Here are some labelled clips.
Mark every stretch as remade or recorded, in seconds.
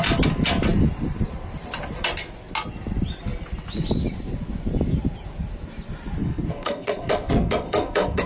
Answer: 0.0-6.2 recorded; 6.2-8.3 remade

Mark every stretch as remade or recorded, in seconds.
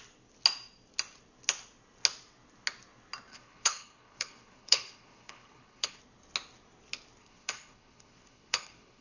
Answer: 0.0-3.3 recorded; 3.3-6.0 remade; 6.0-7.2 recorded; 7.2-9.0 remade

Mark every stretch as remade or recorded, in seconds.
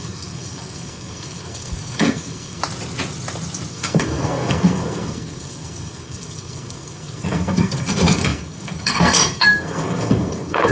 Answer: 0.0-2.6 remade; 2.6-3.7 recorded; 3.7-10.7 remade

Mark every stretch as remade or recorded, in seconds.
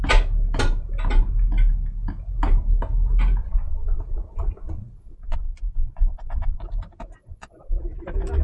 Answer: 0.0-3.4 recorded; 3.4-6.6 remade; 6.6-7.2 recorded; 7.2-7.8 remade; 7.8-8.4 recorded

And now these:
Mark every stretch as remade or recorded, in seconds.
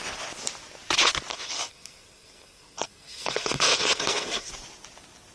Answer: 0.0-1.3 recorded; 1.3-4.5 remade; 4.5-5.3 recorded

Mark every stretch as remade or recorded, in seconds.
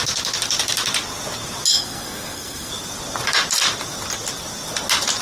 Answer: 0.0-1.7 recorded; 1.7-2.7 remade; 2.7-5.2 recorded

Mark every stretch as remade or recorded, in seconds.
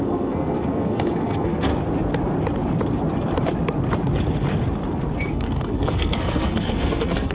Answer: 0.0-1.7 remade; 1.7-5.3 recorded; 5.3-7.3 remade